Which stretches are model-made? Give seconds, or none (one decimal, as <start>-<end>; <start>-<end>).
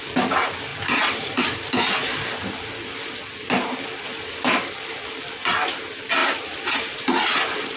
0.7-1.7; 6.2-7.8